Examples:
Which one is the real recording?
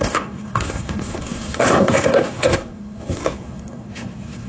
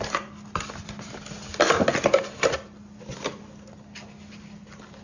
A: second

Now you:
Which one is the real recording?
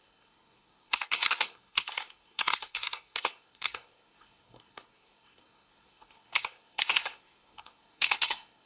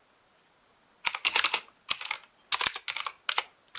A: second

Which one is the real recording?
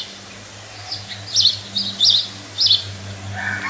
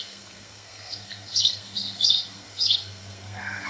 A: first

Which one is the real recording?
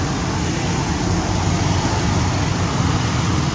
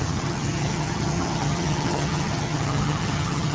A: first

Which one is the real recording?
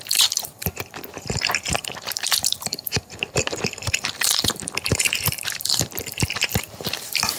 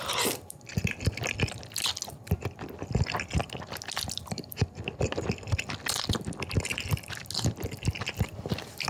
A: second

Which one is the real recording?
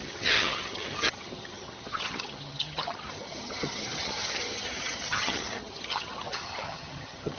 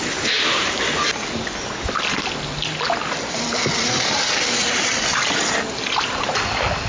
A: second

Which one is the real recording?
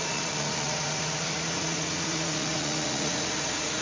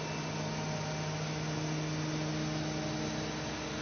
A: second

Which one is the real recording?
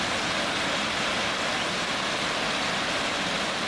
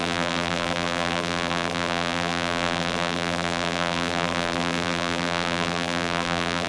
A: first